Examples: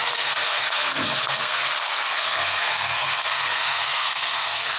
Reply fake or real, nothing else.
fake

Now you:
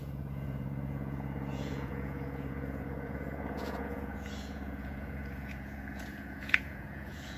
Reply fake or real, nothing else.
fake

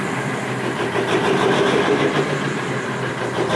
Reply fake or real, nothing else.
fake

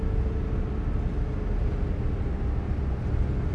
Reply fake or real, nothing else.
real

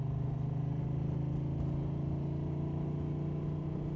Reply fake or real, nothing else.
real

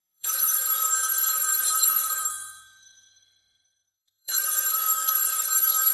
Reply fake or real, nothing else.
fake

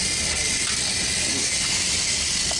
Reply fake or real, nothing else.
real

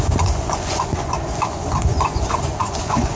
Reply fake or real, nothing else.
fake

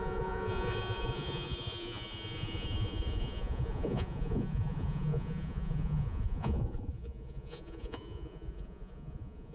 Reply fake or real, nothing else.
fake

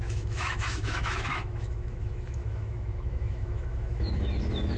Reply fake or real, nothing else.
fake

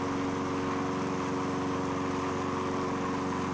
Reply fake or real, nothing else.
real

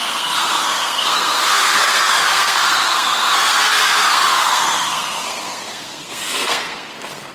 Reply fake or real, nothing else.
fake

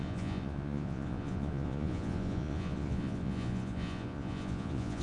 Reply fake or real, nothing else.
fake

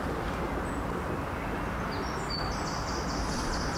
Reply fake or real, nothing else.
real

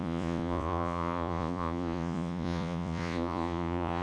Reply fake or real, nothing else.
fake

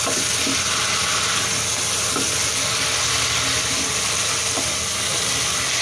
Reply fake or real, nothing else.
real